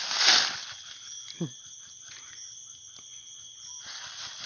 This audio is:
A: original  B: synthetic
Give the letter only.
A